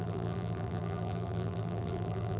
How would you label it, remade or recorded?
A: remade